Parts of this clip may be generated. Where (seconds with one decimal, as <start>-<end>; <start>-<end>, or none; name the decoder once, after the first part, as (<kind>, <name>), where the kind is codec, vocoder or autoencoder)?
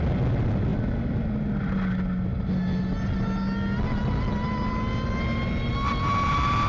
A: none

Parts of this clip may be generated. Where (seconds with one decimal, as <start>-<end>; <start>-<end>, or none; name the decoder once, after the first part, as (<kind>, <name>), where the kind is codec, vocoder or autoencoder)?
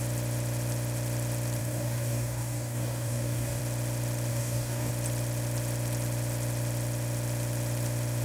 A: 1.6-3.6 (codec, DAC); 4.3-4.9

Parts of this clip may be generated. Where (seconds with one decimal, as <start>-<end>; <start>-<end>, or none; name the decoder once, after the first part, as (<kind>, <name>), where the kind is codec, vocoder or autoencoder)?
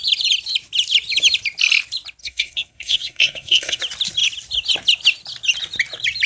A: 2.2-3.8 (codec, SNAC)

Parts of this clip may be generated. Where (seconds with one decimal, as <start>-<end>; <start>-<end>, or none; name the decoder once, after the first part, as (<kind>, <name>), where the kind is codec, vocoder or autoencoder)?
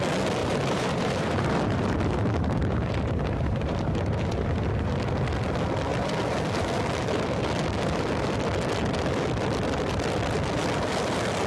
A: 0.4-4.9 (vocoder, BigVGAN v2)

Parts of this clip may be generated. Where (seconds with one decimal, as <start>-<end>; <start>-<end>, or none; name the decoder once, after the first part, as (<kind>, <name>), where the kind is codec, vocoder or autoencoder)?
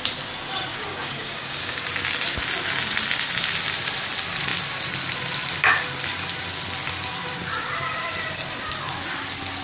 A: 0.7-1.8 (codec, DAC)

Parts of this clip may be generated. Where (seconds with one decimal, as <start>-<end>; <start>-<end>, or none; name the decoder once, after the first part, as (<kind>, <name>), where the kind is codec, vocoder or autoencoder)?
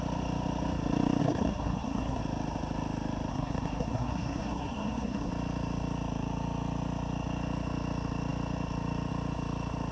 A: 1.2-2.2 (codec, SNAC); 3.3-5.3